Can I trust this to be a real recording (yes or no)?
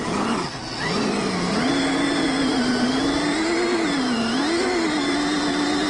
yes